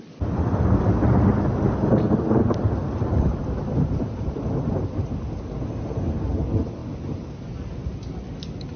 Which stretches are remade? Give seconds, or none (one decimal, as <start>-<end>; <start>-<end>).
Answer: none